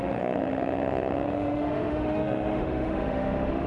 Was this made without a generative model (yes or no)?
no